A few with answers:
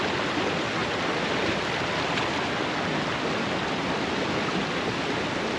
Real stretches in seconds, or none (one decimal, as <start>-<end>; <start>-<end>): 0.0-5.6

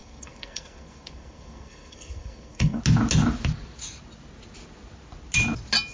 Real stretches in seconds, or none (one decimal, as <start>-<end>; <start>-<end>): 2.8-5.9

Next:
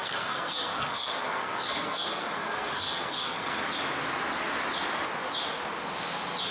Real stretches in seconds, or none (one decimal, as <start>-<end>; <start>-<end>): 3.7-6.5

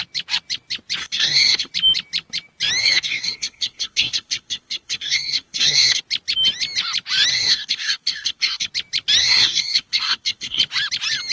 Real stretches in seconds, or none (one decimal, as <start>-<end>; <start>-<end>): 0.0-1.0; 1.7-2.8; 6.0-7.3; 8.7-9.2; 10.6-11.3